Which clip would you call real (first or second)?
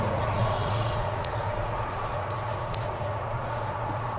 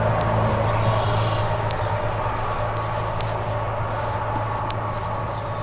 second